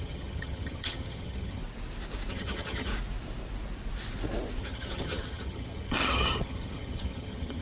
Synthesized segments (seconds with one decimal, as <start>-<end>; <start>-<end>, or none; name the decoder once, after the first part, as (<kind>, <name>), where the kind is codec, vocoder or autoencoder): 0.0-1.6 (vocoder, HiFi-GAN); 2.3-2.9; 4.6-7.6